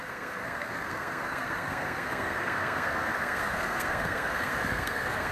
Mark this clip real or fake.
fake